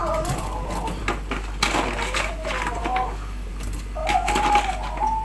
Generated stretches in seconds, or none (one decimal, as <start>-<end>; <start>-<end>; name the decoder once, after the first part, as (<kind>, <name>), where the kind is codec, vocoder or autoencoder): 2.8-3.5 (autoencoder, DAC-VAE)